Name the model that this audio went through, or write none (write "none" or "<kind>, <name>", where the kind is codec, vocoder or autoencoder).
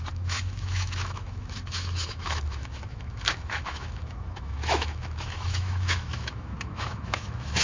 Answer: autoencoder, DAC-VAE